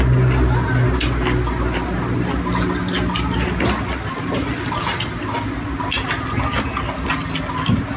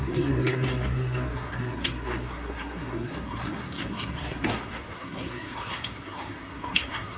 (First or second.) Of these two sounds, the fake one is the second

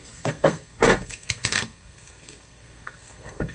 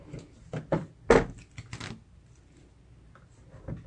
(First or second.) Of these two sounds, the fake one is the first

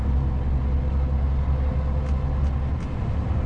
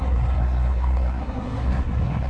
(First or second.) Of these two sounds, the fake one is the second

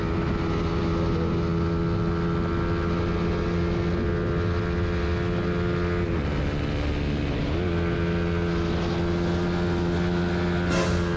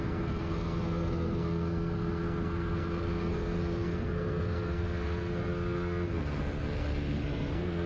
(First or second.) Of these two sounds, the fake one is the second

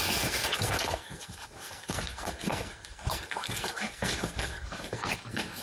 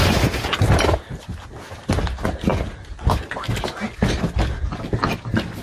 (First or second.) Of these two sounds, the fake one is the first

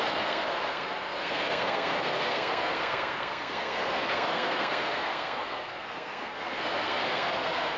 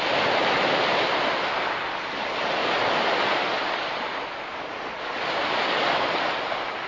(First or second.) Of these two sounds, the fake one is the first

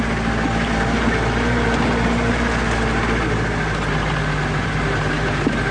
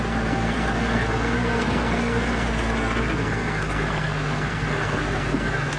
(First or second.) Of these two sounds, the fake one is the second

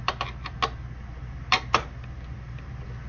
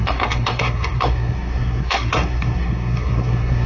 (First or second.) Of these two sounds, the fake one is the second